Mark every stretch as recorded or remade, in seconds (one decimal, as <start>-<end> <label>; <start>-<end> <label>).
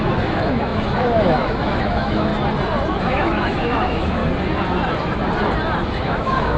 0.0-2.3 remade; 2.3-3.0 recorded; 3.0-4.2 remade; 4.2-6.0 recorded; 6.0-6.6 remade